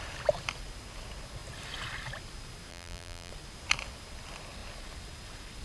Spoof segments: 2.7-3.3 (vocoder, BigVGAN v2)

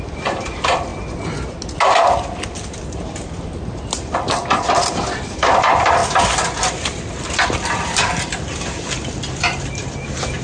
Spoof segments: 0.0-0.9 (vocoder, BigVGAN v2); 2.0-6.0; 6.7-10.4